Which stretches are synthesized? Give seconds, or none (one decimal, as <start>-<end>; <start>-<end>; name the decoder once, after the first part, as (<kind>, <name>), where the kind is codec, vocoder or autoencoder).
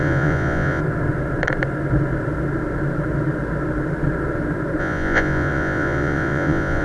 0.0-0.8 (vocoder, Vocos); 4.8-6.8